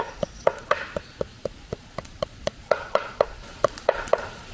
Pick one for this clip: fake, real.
fake